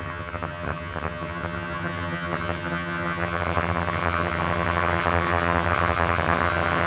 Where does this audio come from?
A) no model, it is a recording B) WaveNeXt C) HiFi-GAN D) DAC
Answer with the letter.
C